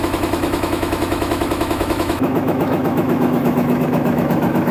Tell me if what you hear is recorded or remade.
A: remade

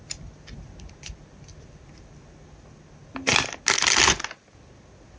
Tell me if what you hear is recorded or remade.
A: recorded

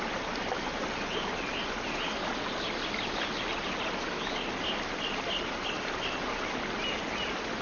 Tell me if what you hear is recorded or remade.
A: recorded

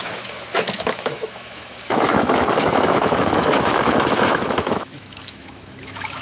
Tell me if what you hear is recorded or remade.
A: remade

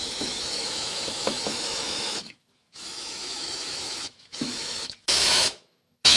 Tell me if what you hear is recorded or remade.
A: remade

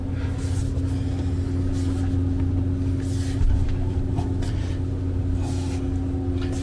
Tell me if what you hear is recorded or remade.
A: recorded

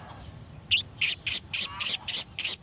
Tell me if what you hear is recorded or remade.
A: recorded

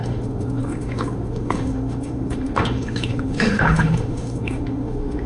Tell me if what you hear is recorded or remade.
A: remade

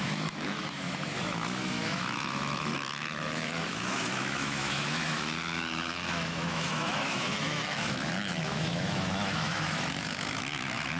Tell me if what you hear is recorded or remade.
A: remade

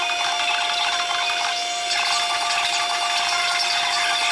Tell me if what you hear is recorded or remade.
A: recorded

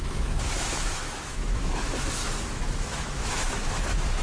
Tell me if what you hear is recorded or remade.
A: remade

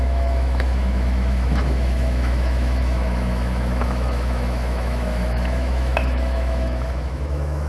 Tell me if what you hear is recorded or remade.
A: remade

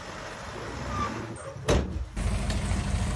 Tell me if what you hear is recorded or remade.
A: recorded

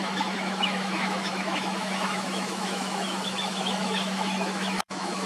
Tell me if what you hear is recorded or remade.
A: remade